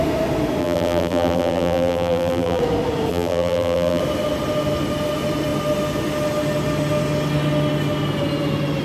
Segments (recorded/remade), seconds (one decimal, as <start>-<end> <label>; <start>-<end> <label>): 0.0-0.6 recorded; 0.6-2.6 remade; 2.6-3.1 recorded; 3.1-4.0 remade; 4.0-8.8 recorded

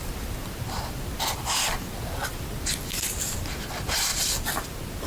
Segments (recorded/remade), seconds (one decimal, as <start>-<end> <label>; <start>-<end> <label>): 0.0-0.4 recorded; 0.4-1.1 remade; 1.1-4.1 recorded; 4.1-5.1 remade

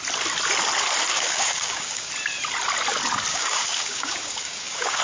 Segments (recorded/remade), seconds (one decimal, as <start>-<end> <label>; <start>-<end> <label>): 0.0-1.1 recorded; 1.1-2.1 remade; 2.1-3.3 recorded; 3.3-5.0 remade

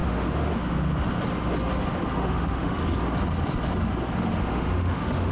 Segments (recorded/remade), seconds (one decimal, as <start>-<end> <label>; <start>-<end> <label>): 0.0-0.5 remade; 0.5-2.2 recorded; 2.2-2.8 remade; 2.8-4.5 recorded; 4.5-5.3 remade

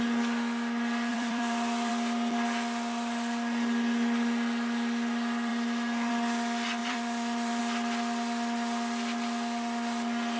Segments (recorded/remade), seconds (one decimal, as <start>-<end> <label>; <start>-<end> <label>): 0.0-1.1 recorded; 1.1-1.9 remade; 1.9-6.8 recorded; 6.8-7.6 remade; 7.6-10.4 recorded

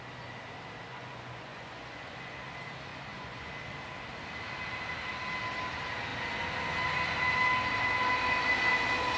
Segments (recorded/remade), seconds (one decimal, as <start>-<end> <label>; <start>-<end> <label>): 0.0-0.9 recorded; 0.9-2.3 remade; 2.3-2.9 recorded; 2.9-3.5 remade; 3.5-9.2 recorded